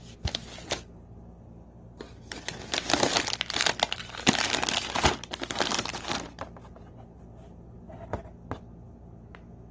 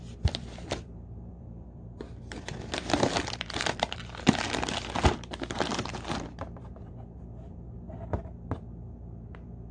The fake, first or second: second